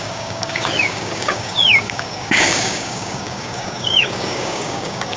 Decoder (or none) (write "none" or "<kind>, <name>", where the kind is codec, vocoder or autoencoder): codec, DAC